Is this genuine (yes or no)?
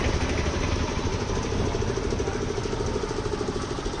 yes